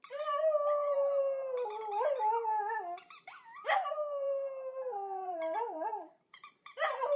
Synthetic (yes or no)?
yes